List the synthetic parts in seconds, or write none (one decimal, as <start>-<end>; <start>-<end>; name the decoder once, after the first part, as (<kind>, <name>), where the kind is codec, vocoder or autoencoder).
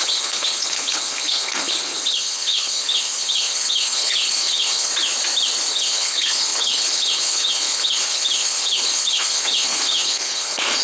0.0-4.9 (codec, HILCodec); 5.7-10.8